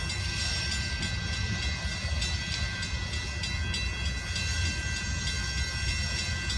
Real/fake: real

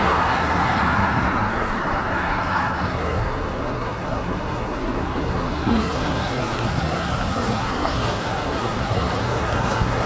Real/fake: fake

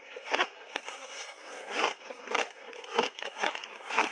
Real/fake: fake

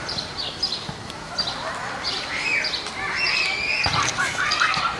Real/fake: real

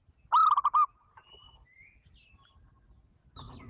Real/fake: real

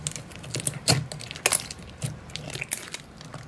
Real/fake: real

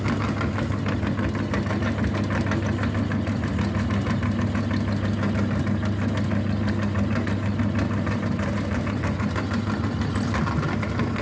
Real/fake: real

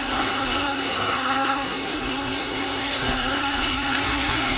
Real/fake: fake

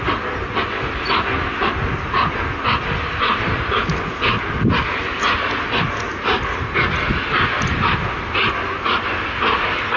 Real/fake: real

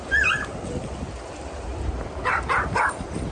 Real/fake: real